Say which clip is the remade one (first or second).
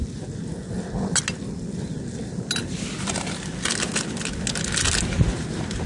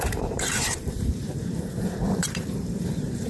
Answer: second